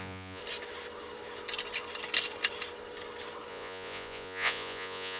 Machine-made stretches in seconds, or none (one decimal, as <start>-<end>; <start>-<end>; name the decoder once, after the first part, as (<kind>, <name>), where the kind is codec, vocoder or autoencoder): 0.0-0.4 (vocoder, Vocos); 3.5-5.2